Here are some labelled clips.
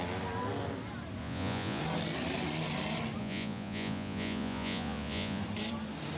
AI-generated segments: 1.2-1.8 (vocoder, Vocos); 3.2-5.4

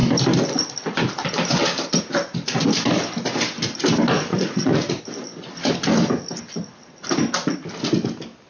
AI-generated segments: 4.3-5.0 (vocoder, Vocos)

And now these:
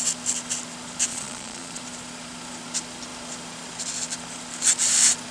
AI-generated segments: 1.1-1.8 (vocoder, Vocos)

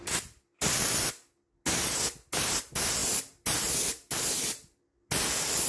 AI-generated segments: none

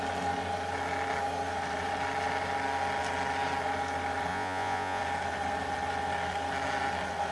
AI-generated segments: 4.3-5.0 (vocoder, Vocos)

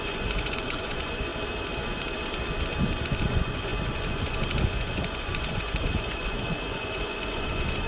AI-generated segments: 0.0-1.3 (vocoder, Vocos); 3.2-7.9

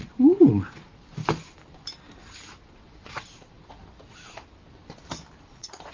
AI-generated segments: 0.0-1.2 (vocoder, Vocos); 2.9-3.8; 5.5-5.9